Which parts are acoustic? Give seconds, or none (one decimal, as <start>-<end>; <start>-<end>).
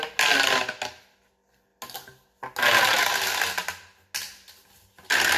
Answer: 0.0-5.4